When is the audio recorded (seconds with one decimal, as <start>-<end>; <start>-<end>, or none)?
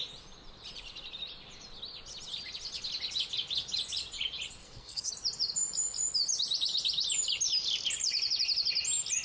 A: 0.0-4.6; 5.1-9.2